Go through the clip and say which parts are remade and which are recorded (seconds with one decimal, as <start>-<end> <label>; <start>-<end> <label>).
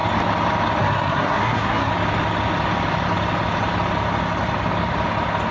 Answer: 0.0-0.8 recorded; 0.8-1.9 remade; 1.9-5.5 recorded